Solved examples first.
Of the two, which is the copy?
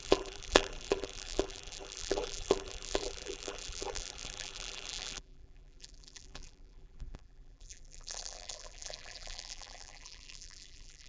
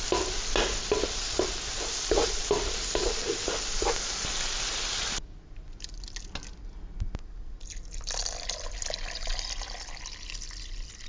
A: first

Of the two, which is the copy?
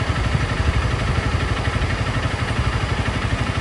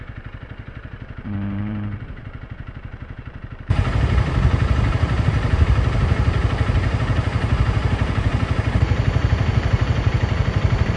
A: second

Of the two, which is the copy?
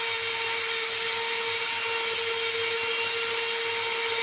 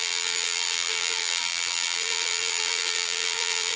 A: second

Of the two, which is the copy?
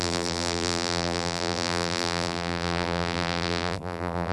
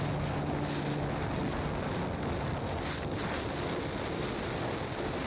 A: first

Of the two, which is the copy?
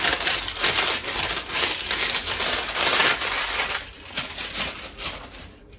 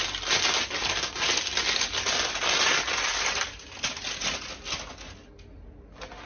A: first